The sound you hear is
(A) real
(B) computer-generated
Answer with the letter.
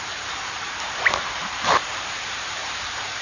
B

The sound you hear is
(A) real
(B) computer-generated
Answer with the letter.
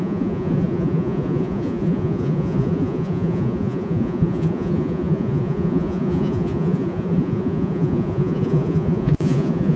B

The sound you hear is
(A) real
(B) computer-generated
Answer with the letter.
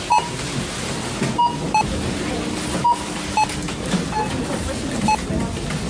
A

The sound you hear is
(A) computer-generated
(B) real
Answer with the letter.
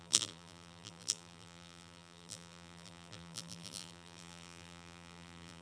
A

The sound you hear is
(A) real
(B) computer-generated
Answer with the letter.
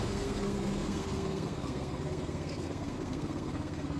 B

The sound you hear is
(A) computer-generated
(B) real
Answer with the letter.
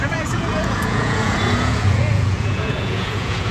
A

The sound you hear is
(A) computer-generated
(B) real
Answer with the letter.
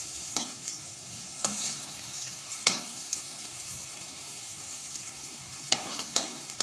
A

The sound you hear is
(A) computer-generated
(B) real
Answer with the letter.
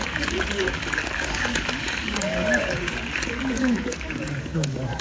A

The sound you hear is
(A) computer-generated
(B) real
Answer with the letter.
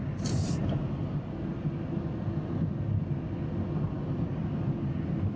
B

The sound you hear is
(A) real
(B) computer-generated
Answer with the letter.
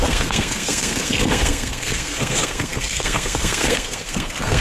B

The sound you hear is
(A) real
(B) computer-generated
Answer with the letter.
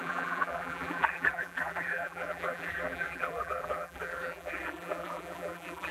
B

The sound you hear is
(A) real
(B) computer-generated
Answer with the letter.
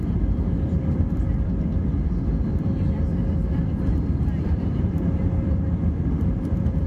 B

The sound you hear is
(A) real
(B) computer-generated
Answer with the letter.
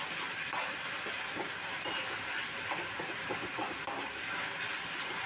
B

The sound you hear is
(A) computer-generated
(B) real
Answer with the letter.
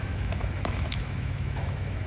A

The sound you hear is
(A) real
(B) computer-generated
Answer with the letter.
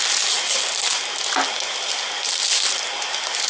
A